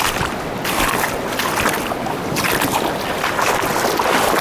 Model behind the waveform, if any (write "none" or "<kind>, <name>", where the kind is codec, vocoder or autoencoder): none